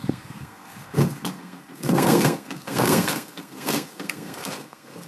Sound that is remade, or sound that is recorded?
remade